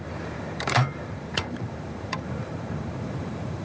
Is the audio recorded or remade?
remade